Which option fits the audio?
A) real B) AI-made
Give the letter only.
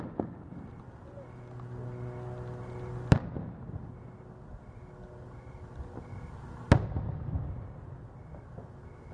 A